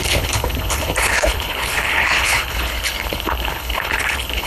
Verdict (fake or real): fake